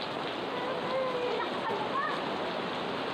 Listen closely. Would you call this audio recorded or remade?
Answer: recorded